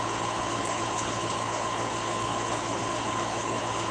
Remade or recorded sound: remade